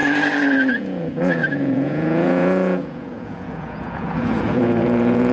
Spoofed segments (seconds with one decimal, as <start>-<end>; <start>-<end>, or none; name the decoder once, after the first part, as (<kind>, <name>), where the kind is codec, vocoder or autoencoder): 0.7-5.3 (vocoder, Vocos)

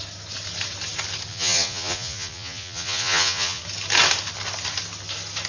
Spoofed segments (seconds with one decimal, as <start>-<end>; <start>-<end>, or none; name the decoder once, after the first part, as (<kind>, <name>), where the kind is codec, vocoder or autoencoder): 1.3-3.6 (vocoder, Vocos)

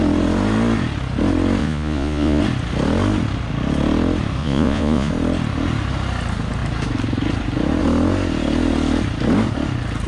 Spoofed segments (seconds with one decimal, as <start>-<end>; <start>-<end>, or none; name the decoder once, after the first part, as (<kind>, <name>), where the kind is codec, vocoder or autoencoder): 1.6-2.4 (vocoder, Vocos); 4.4-5.1